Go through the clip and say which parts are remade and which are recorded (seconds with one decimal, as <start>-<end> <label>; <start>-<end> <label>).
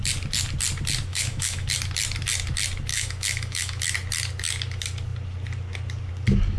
0.0-1.1 recorded; 1.1-1.7 remade; 1.7-2.9 recorded; 2.9-3.8 remade; 3.8-6.6 recorded